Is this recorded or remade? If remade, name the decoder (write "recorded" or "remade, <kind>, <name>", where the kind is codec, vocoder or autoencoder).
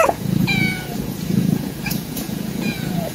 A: remade, vocoder, Vocos